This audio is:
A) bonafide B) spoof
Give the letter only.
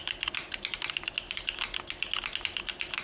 A